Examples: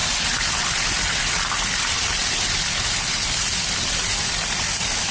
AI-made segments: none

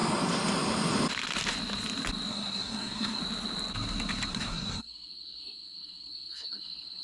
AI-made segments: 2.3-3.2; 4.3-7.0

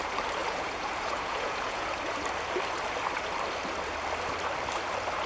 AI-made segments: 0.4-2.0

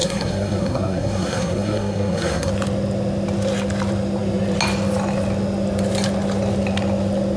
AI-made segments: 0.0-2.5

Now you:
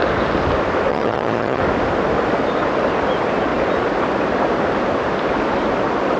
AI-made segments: 0.9-1.6

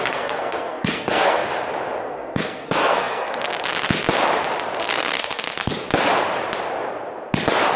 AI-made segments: 0.0-1.4; 2.0-3.5; 4.8-5.7

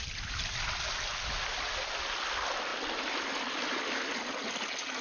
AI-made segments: none